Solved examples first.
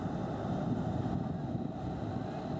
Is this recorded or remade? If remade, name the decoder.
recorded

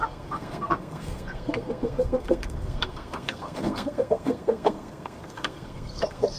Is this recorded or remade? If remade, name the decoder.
remade, codec, SNAC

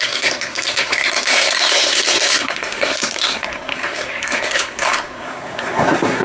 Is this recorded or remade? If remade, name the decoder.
remade, codec, SNAC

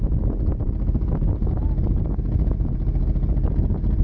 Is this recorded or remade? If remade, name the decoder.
recorded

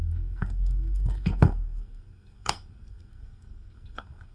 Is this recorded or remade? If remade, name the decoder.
remade, codec, SNAC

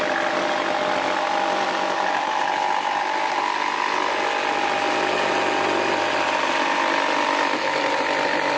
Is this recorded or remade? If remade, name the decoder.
recorded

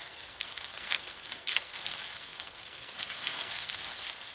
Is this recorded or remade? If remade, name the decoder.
remade, codec, SNAC